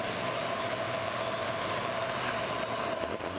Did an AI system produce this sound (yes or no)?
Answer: no